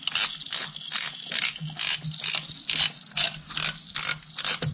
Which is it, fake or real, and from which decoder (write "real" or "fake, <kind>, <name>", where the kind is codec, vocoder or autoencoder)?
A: real